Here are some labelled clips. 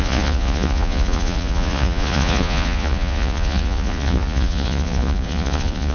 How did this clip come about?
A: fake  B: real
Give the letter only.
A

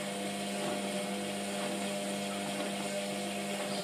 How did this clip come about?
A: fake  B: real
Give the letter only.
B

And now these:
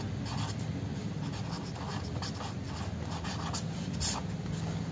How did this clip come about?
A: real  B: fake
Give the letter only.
A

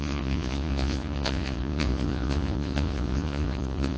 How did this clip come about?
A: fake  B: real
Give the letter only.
A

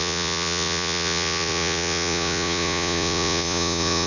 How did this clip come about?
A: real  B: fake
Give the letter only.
B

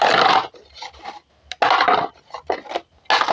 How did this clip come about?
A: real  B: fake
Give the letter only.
A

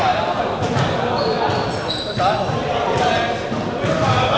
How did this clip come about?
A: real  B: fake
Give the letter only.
A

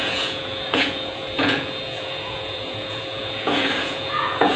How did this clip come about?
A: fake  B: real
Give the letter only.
A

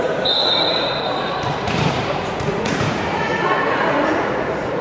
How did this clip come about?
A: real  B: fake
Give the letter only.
B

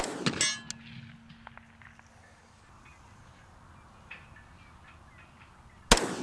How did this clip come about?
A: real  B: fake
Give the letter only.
A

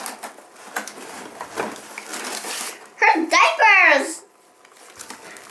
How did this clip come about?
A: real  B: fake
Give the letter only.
A